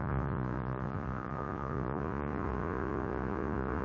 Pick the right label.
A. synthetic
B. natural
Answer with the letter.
A